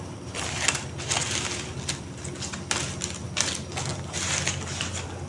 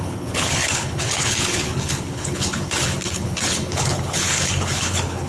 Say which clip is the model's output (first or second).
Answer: second